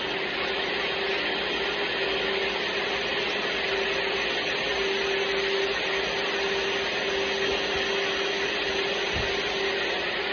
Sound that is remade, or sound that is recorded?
recorded